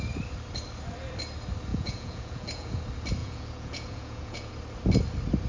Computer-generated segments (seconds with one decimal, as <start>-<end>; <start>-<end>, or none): 1.7-2.8; 3.2-4.5